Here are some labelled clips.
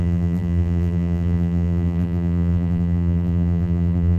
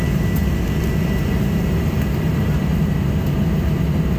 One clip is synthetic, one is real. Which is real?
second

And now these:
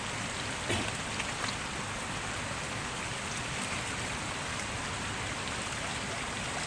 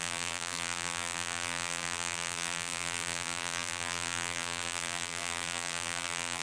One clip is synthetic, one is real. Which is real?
first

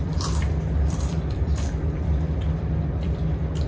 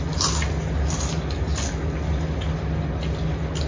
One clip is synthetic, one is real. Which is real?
second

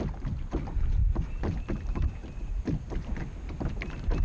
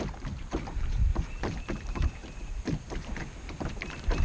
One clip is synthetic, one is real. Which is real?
first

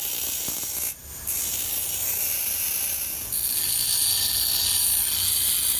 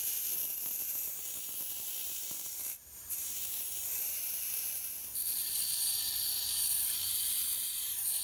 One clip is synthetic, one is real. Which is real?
first